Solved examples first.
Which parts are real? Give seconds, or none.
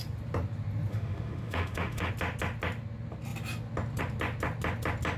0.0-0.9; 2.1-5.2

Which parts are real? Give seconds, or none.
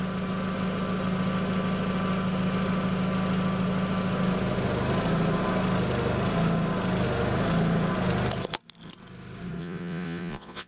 0.0-9.6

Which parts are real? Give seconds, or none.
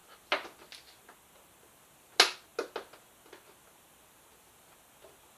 0.0-5.4